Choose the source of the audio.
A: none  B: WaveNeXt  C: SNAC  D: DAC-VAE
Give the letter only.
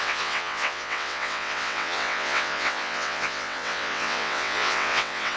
B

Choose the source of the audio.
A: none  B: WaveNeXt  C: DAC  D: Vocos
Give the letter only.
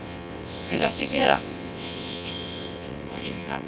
B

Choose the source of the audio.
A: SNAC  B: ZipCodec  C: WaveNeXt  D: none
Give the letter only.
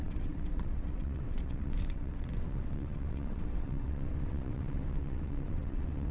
C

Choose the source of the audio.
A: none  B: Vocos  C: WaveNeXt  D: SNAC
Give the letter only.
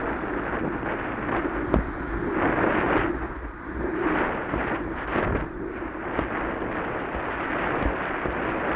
A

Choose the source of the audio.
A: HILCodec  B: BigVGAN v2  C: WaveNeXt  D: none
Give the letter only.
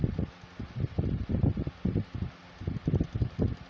D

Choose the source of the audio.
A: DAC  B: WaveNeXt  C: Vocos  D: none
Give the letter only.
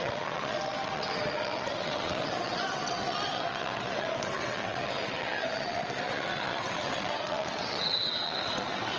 B